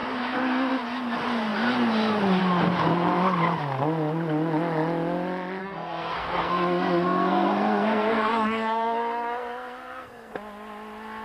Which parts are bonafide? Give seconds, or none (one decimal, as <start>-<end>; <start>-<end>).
0.0-5.6; 10.3-11.2